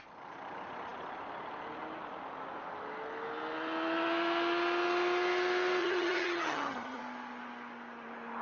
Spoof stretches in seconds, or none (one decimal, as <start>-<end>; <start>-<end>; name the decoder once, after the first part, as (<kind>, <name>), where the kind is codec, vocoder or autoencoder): 5.8-7.0 (vocoder, HiFi-GAN)

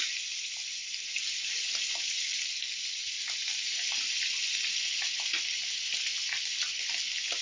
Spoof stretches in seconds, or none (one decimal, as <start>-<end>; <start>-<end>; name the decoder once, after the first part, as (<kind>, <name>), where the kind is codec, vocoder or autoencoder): none

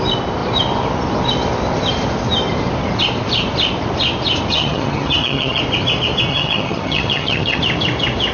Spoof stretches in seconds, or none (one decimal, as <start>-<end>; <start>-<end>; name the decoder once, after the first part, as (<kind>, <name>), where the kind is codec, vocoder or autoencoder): 4.5-5.6 (vocoder, HiFi-GAN); 6.3-7.6